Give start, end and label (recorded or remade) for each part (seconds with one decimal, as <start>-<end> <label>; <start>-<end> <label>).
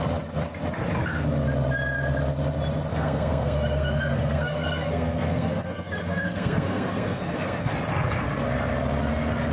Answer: 0.0-2.9 recorded; 2.9-7.7 remade; 7.7-9.5 recorded